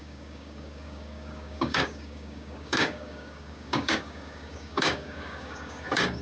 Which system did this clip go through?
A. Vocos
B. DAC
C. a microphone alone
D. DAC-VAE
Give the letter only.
B